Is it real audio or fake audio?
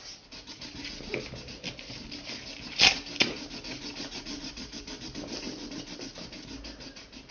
real